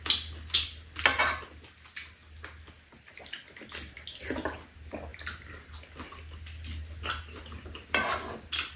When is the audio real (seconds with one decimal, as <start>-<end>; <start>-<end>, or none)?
0.0-8.8